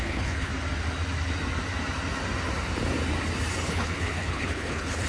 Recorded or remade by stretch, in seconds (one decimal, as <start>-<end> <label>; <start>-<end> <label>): 0.0-0.5 remade; 0.5-3.6 recorded; 3.6-5.1 remade